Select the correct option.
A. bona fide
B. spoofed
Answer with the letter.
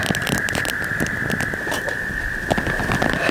A